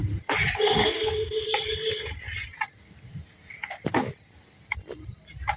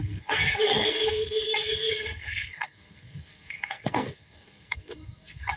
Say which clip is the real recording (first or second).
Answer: first